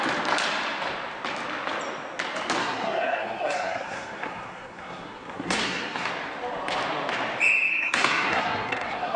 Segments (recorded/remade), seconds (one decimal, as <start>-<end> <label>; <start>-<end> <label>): 0.0-2.6 recorded; 2.6-6.1 remade; 6.1-7.7 recorded; 7.7-9.2 remade